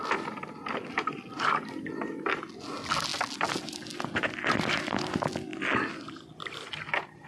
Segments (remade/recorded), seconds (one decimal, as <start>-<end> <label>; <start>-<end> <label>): 0.0-7.3 recorded